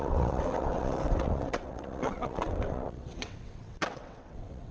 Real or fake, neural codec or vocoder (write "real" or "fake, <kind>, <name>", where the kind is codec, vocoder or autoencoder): fake, vocoder, WaveNeXt